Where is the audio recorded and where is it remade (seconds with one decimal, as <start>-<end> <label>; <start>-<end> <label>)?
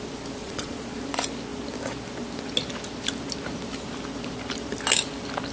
0.0-0.4 recorded; 0.4-1.0 remade; 1.0-5.5 recorded